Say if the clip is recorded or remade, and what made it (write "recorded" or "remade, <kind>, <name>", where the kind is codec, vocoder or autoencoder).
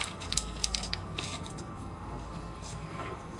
remade, codec, SNAC